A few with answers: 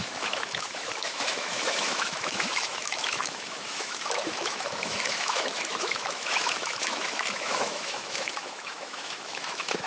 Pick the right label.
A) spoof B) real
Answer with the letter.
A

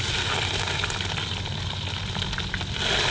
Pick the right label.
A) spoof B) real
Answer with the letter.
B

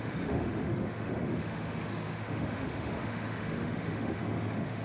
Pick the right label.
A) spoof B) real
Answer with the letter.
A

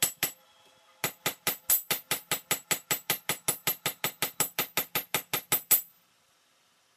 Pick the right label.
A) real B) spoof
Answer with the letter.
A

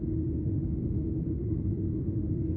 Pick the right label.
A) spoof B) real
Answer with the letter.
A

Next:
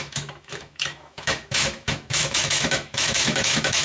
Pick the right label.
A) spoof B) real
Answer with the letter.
A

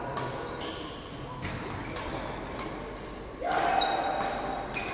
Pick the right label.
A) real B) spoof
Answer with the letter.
A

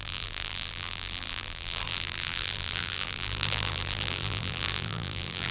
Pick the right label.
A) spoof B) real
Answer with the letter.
A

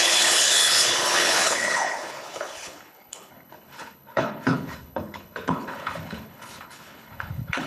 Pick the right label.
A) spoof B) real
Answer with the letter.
A